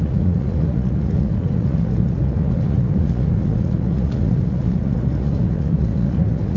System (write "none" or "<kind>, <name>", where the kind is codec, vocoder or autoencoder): vocoder, Vocos